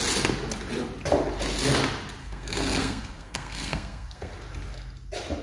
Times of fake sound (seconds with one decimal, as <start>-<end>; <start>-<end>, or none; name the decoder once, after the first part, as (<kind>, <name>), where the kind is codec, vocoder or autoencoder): 2.2-4.3 (codec, SNAC)